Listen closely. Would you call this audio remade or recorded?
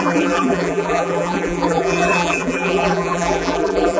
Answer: remade